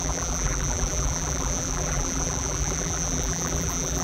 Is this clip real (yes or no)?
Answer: no